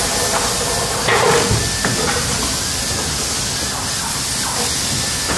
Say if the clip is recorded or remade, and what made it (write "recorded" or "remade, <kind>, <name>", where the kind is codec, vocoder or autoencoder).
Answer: recorded